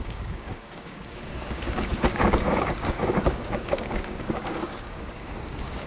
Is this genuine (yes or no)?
no